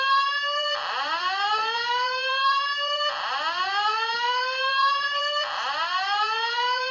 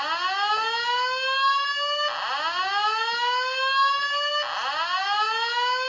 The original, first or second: second